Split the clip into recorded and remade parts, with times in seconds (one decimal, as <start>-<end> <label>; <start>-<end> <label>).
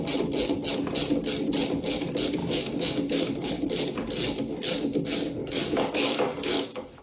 0.0-2.4 recorded; 2.4-3.5 remade; 3.5-5.4 recorded; 5.4-7.0 remade